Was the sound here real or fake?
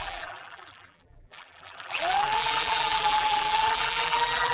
fake